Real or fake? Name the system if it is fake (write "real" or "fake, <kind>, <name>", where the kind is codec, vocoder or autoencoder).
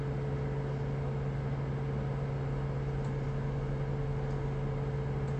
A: real